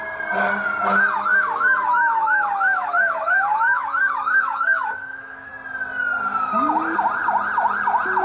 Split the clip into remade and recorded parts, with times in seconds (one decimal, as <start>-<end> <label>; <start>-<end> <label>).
0.0-1.3 recorded; 1.3-5.5 remade; 5.5-8.2 recorded